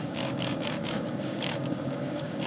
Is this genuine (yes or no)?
no